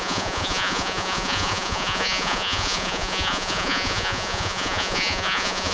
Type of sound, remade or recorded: remade